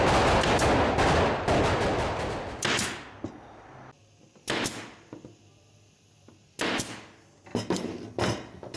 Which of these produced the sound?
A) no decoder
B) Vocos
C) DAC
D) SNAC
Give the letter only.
A